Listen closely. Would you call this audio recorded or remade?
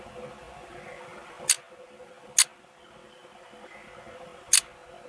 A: recorded